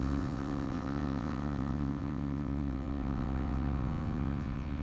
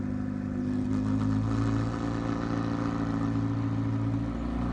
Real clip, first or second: second